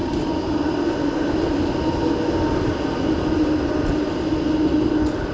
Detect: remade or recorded recorded